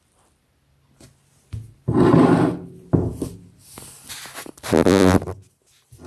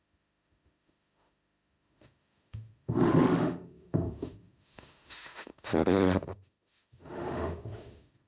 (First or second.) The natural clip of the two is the first